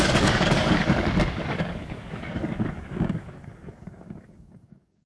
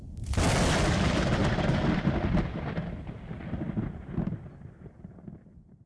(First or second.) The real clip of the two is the second